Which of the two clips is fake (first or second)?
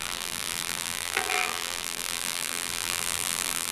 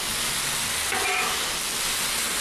first